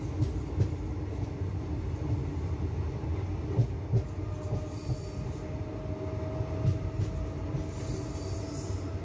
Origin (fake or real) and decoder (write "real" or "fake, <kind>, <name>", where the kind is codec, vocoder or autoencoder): real